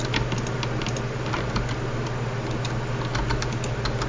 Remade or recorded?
recorded